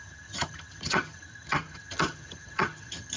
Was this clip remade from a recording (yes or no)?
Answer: yes